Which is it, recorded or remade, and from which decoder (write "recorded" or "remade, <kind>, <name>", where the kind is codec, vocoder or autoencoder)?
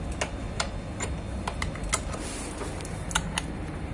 recorded